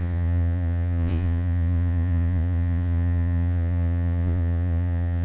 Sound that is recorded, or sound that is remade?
remade